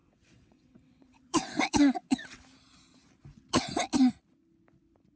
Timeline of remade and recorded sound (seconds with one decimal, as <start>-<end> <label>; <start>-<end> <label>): 0.0-2.4 remade; 2.4-5.2 recorded